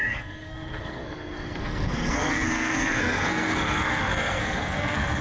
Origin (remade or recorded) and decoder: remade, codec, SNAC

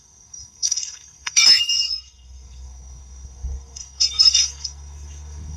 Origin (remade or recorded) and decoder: remade, codec, SNAC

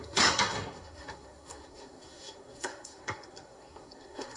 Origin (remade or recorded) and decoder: remade, codec, SNAC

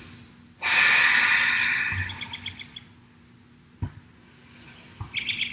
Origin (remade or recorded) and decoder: recorded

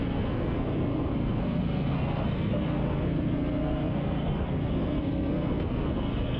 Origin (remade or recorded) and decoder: remade, codec, SNAC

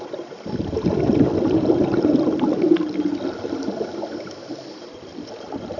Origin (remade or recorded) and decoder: recorded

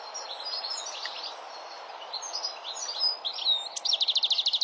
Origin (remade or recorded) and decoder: recorded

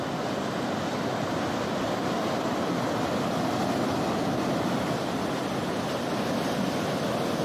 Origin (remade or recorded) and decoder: recorded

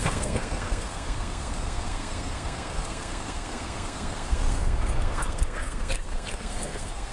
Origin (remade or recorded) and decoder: remade, codec, SNAC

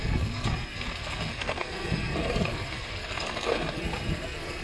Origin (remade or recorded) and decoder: remade, codec, SNAC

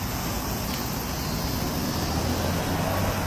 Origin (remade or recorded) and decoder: recorded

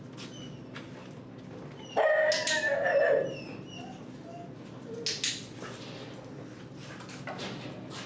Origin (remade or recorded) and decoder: recorded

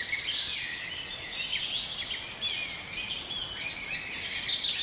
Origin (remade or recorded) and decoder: recorded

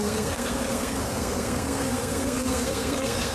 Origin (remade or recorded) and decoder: remade, codec, SNAC